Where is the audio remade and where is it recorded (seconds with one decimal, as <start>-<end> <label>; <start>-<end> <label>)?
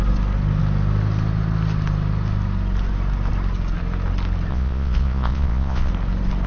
0.0-4.5 recorded; 4.5-5.9 remade; 5.9-6.5 recorded